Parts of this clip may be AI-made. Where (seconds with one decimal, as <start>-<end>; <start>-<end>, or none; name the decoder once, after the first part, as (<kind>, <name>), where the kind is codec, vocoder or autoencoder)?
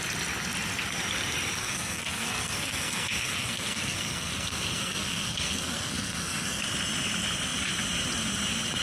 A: 1.6-6.6 (codec, SNAC)